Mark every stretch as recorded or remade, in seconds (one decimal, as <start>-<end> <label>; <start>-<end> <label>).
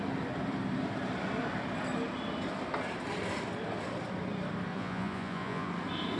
0.0-4.7 recorded; 4.7-5.7 remade; 5.7-6.2 recorded